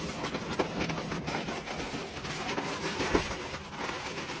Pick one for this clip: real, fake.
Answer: real